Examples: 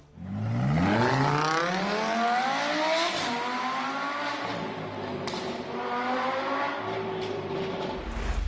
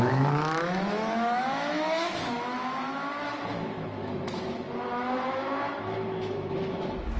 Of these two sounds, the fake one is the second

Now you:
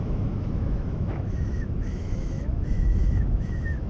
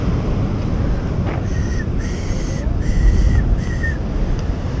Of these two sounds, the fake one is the first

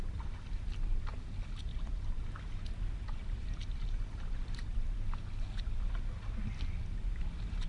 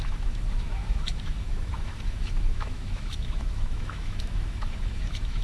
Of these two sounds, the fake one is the second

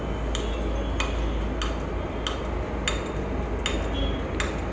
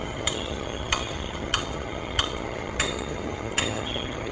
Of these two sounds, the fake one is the second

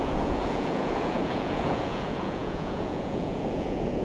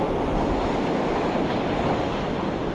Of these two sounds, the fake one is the first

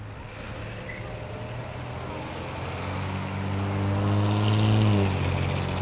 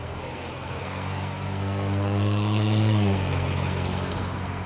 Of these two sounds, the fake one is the second